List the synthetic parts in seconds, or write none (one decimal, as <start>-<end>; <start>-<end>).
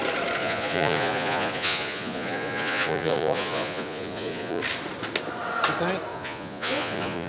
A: 0.4-4.6; 6.1-7.3